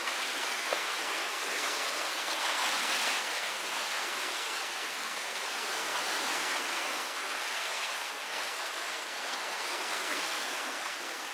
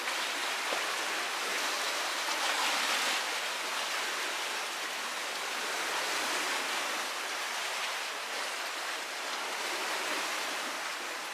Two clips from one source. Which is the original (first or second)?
second